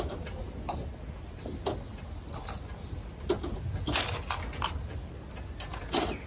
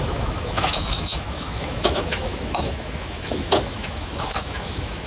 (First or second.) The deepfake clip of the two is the second